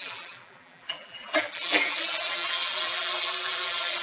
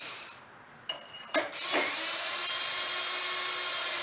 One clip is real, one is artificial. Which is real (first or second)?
second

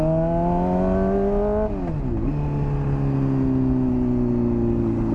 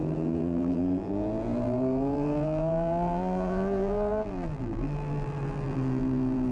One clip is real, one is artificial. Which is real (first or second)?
first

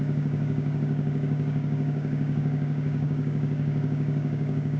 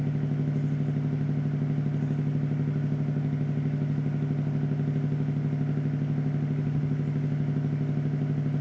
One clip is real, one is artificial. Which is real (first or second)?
second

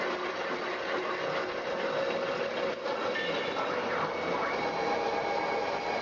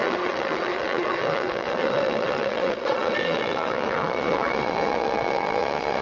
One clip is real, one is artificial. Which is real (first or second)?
first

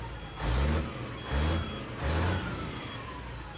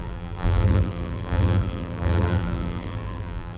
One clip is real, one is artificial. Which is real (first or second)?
first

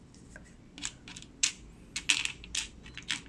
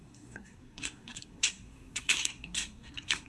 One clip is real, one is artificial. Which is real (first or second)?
first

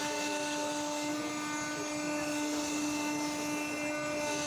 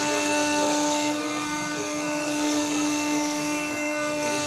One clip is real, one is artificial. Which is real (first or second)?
first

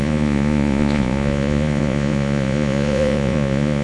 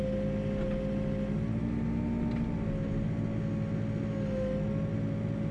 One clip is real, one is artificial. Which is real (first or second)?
second